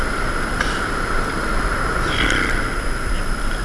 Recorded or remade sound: recorded